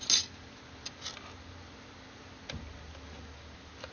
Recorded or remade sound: recorded